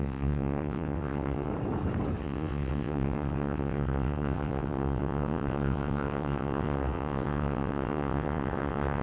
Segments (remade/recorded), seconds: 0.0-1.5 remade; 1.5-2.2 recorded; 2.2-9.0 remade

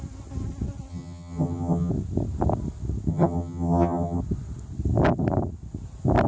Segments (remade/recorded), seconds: 0.0-0.9 recorded; 0.9-1.9 remade; 1.9-3.1 recorded; 3.1-4.2 remade; 4.2-6.3 recorded

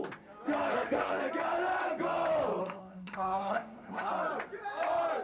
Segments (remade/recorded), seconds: 0.0-0.7 recorded; 0.7-1.2 remade; 1.2-2.6 recorded; 2.6-4.1 remade; 4.1-5.2 recorded

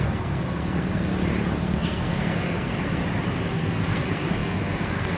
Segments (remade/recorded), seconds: 0.0-1.1 remade; 1.1-1.6 recorded; 1.6-3.0 remade; 3.0-3.5 recorded; 3.5-5.2 remade